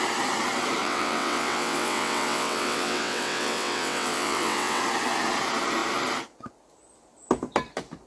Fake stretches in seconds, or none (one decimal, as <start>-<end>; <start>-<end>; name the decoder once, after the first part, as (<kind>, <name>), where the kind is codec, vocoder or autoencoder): 0.8-4.8 (vocoder, WaveNeXt)